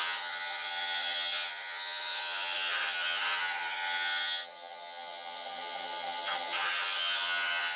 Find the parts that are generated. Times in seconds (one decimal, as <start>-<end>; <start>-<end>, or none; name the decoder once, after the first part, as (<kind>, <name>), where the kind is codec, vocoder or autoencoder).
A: 0.0-7.8 (vocoder, HiFi-GAN)